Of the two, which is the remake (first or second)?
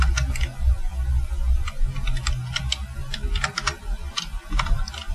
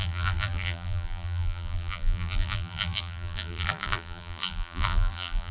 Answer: second